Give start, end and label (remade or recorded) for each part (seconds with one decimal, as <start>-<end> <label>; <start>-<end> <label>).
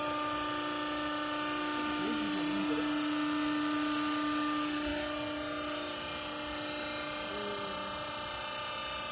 0.0-9.1 recorded